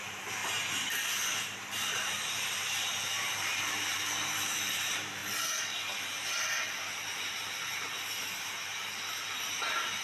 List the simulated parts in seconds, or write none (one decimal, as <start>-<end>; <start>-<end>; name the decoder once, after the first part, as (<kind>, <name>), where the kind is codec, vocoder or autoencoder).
0.0-0.4 (vocoder, BigVGAN v2); 1.4-5.2; 7.3-10.0